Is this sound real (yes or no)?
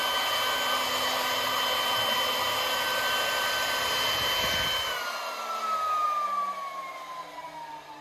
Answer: yes